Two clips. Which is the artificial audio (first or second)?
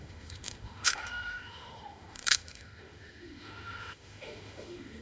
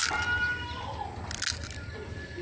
first